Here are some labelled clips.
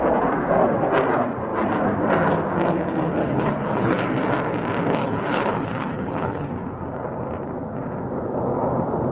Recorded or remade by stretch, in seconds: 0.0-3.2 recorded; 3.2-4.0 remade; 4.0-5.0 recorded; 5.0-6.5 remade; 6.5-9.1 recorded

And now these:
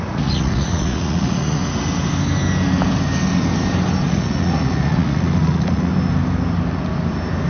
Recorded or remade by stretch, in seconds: 0.0-1.6 remade; 1.6-4.1 recorded; 4.1-5.9 remade; 5.9-7.5 recorded

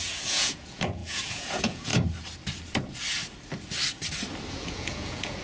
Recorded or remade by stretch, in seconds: 0.0-1.9 remade; 1.9-4.5 recorded; 4.5-5.4 remade

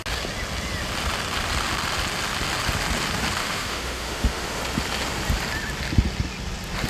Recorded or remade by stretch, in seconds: 0.0-3.4 recorded; 3.4-4.6 remade; 4.6-6.9 recorded

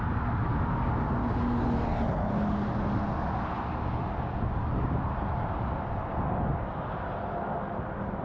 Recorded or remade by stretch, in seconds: 0.0-8.2 recorded

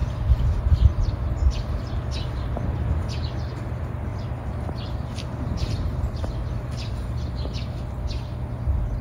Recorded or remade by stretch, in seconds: 0.0-0.6 remade; 0.6-4.1 recorded; 4.1-7.1 remade; 7.1-9.0 recorded

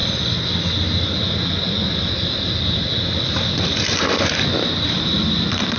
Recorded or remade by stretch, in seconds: 0.0-2.5 recorded; 2.5-2.9 remade; 2.9-3.6 recorded; 3.6-5.8 remade